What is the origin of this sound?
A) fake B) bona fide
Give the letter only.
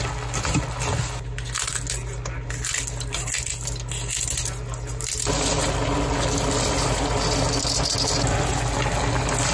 B